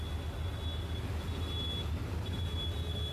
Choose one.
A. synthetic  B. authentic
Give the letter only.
B